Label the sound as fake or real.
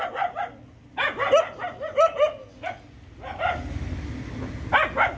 real